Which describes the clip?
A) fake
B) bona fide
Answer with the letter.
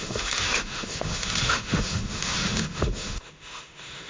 A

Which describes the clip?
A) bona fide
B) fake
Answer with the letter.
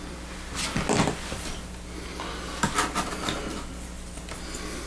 A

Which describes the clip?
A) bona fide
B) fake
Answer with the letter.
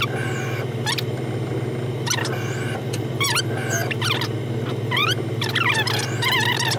A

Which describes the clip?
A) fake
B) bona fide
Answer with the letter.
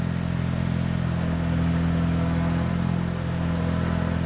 B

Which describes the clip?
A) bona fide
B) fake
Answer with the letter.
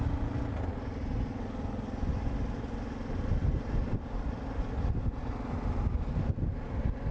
A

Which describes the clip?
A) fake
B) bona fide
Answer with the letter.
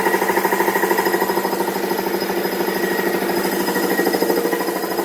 B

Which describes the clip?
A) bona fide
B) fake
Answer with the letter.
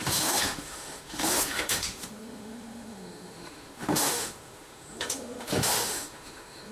B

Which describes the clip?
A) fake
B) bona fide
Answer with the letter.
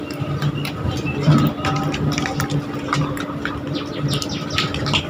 B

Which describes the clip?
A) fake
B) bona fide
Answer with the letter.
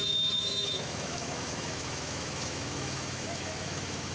A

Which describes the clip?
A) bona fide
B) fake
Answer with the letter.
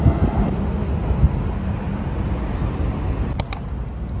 A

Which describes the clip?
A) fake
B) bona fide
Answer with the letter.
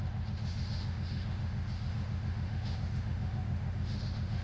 A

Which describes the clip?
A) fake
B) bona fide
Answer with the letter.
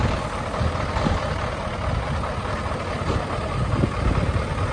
B